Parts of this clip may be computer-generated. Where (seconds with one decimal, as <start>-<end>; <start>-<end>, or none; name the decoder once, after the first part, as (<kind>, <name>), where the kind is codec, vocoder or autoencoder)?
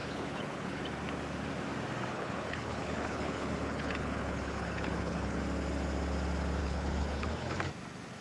0.0-0.8 (codec, HILCodec); 2.1-5.4; 6.6-7.7